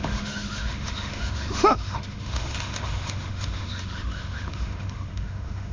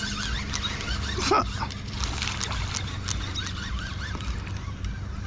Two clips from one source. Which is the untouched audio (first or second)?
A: second